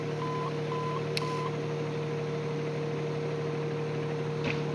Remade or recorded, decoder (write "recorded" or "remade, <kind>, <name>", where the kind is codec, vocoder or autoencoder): recorded